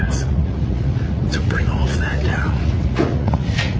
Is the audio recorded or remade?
remade